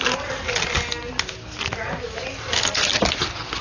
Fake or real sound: real